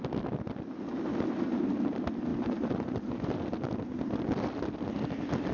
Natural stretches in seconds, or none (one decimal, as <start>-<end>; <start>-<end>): 0.0-2.3; 3.1-5.5

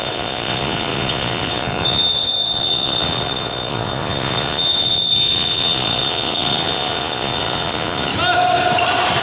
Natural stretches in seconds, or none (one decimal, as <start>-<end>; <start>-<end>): 8.1-9.2